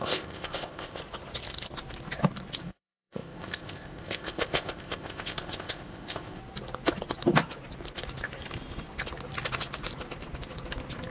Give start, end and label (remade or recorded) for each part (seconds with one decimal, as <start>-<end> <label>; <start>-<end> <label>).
0.0-1.0 remade; 1.0-2.6 recorded; 2.6-6.4 remade; 6.4-11.1 recorded